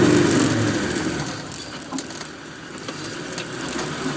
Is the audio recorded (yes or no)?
yes